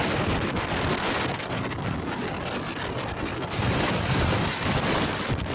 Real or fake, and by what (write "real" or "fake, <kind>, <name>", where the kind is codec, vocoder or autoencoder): fake, vocoder, BigVGAN v2